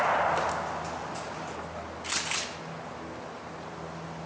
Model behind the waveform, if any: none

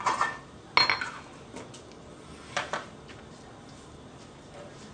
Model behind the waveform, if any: none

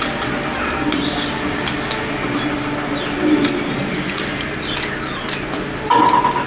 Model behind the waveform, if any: none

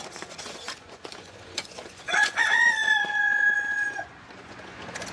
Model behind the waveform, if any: vocoder, Vocos